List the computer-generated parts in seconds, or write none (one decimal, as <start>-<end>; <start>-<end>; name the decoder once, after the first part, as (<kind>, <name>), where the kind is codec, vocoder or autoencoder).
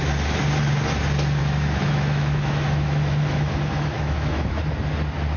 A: 1.4-4.6 (autoencoder, DAC-VAE)